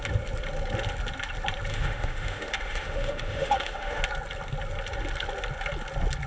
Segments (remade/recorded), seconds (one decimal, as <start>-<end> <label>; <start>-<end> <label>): 0.0-1.7 recorded; 1.7-4.0 remade; 4.0-6.3 recorded